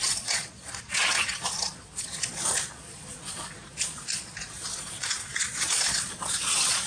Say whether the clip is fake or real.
fake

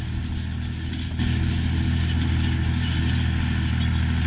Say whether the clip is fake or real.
real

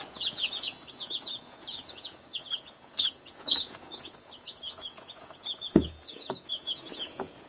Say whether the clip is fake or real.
fake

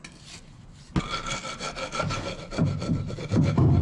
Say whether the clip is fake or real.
real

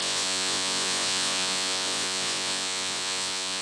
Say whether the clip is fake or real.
fake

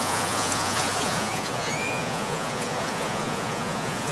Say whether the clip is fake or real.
fake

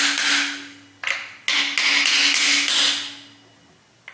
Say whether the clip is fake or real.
real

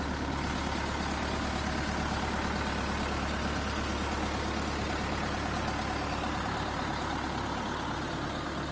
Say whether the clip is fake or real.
real